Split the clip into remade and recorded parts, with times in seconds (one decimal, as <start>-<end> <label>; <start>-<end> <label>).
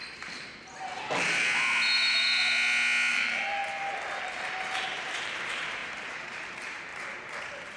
0.0-0.5 remade; 0.5-3.1 recorded; 3.1-3.6 remade; 3.6-4.2 recorded; 4.2-6.9 remade; 6.9-7.8 recorded